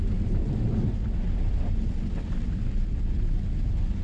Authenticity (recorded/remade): recorded